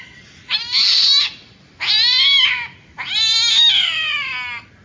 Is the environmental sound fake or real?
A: real